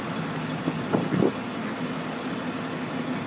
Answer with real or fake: real